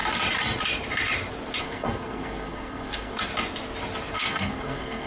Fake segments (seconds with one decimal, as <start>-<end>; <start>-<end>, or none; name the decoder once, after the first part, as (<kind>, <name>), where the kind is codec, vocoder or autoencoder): 1.6-3.3 (codec, SNAC); 4.1-5.1